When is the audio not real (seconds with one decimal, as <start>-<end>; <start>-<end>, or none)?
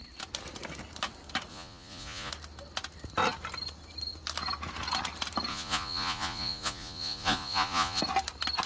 1.5-2.3; 5.5-8.0